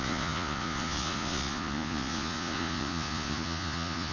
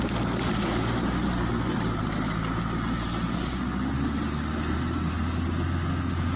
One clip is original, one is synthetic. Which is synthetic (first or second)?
first